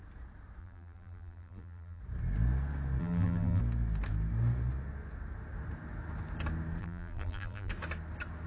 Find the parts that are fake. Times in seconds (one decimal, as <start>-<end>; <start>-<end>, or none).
0.6-2.0; 3.0-3.6; 6.8-7.7